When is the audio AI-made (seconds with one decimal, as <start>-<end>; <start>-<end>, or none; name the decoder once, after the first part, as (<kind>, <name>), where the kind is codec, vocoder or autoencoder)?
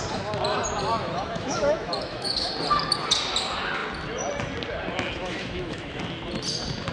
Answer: 0.9-2.5 (autoencoder, DAC-VAE); 5.2-6.0